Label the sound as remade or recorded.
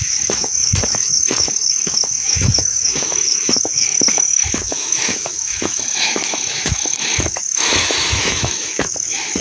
remade